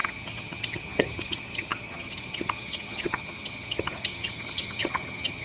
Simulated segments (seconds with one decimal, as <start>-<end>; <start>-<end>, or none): 0.0-5.4